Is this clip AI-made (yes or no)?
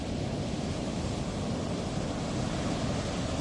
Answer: no